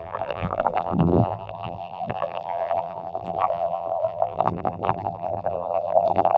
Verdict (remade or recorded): remade